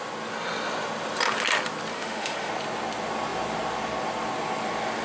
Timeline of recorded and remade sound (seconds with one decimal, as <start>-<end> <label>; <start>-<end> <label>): 0.0-1.9 recorded; 1.9-2.5 remade; 2.5-5.0 recorded